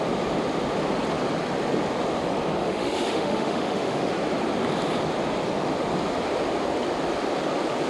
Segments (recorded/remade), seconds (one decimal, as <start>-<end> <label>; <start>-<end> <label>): 0.0-2.6 recorded; 2.6-4.1 remade; 4.1-7.9 recorded